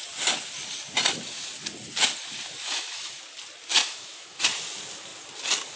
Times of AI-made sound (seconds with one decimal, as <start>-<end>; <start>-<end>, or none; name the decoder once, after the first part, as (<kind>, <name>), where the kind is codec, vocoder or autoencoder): 2.6-3.2 (autoencoder, DAC-VAE); 3.8-4.4